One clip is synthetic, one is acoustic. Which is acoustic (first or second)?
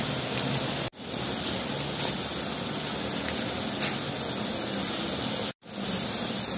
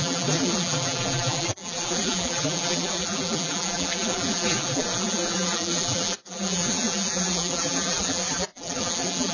first